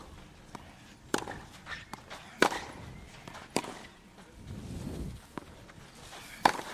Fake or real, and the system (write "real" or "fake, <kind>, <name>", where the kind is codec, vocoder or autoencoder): real